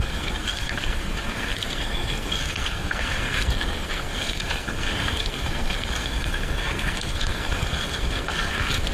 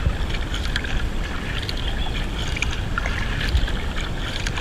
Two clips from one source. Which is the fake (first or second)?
first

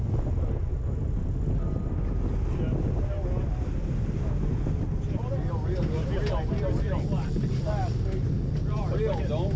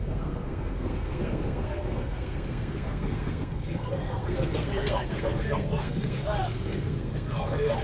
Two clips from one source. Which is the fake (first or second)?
second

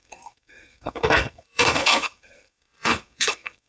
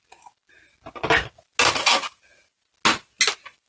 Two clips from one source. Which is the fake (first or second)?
first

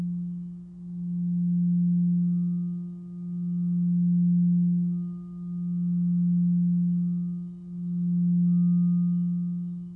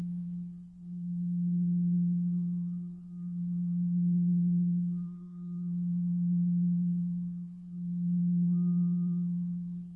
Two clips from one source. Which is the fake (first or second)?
second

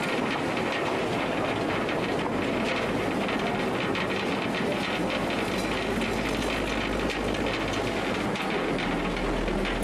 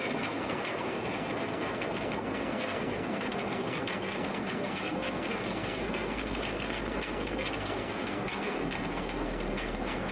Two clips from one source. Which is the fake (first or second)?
second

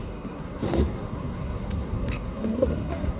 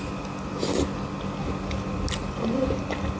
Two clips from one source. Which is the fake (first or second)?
first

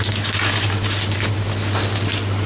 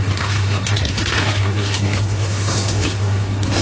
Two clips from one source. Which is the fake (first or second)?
second